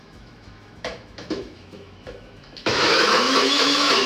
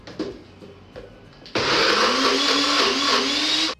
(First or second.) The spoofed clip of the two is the first